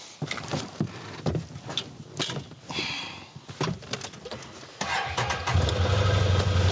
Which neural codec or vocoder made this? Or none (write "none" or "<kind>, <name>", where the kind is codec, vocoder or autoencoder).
none